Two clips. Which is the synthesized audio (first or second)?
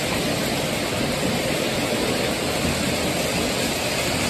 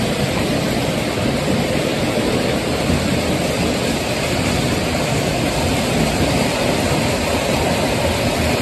second